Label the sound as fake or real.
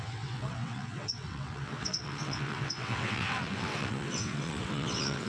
fake